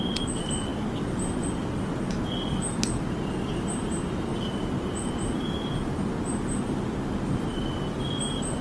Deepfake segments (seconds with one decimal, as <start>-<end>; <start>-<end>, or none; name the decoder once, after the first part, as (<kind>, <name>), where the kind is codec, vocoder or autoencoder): none